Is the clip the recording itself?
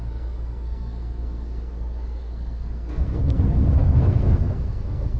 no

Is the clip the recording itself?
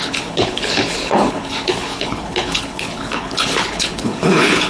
no